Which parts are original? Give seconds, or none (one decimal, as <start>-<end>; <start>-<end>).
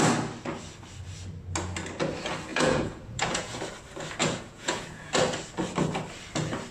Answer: 0.0-2.5; 3.6-4.2; 5.1-6.7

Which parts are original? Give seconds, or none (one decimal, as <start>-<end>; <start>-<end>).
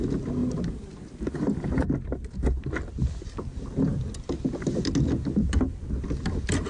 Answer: 0.0-0.4; 2.6-6.7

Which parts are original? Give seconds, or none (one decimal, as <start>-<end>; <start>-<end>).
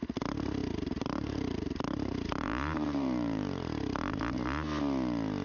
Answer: 0.0-0.6; 3.8-5.4